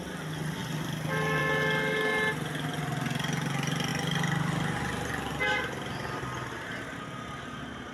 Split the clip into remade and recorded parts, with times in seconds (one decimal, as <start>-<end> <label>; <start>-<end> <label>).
0.0-7.9 recorded